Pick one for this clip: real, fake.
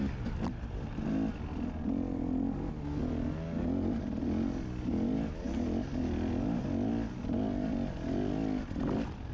real